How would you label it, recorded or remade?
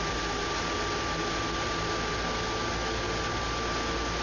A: recorded